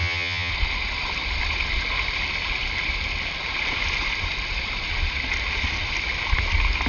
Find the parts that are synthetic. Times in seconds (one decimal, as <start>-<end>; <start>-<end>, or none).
0.0-0.5